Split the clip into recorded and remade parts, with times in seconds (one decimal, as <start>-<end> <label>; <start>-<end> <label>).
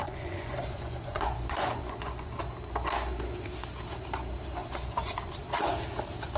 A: 0.0-2.4 remade; 2.4-4.6 recorded; 4.6-5.5 remade; 5.5-6.4 recorded